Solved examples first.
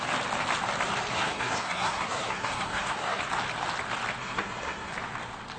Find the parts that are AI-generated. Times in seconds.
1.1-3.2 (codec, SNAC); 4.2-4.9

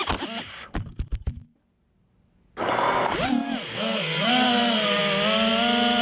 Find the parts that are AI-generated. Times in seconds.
3.6-5.0 (codec, SNAC)

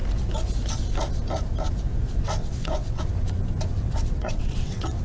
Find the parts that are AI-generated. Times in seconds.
2.4-3.0 (vocoder, WaveNeXt); 3.7-5.0

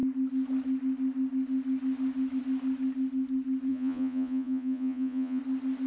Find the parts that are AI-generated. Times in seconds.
3.7-5.4 (vocoder, Vocos)